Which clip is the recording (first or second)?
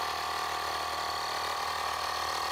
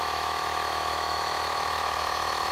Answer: first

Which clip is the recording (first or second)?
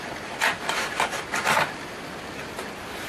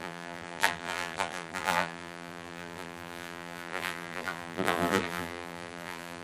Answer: first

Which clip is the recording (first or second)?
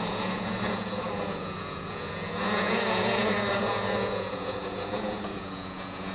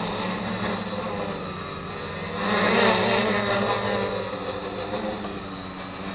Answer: second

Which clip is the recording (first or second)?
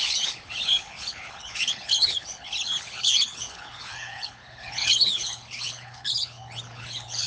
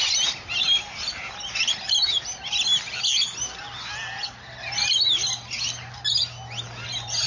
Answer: second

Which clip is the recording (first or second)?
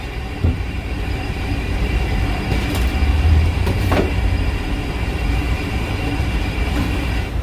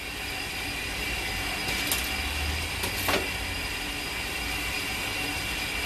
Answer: second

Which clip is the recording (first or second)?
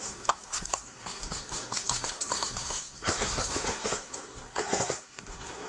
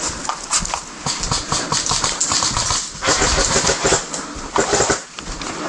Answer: second